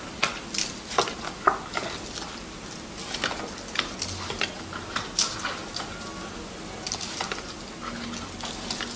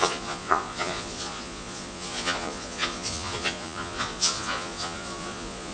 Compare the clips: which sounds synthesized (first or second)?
second